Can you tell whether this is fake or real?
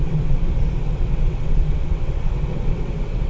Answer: fake